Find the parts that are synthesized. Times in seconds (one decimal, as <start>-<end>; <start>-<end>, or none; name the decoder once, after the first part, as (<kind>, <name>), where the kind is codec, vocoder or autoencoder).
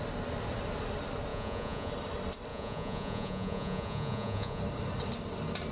1.3-1.9 (vocoder, Vocos); 2.5-4.6